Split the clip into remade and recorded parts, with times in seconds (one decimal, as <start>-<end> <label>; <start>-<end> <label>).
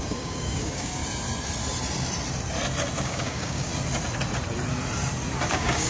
0.0-1.0 remade; 1.0-3.0 recorded; 3.0-3.7 remade; 3.7-5.5 recorded; 5.5-5.9 remade